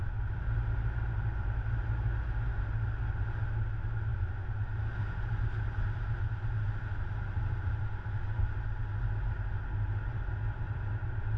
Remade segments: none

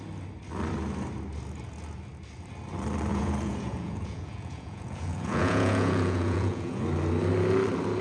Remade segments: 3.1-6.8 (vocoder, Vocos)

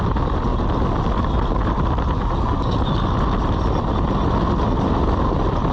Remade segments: none

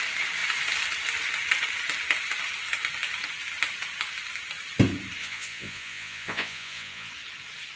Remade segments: 5.2-7.1 (vocoder, Vocos)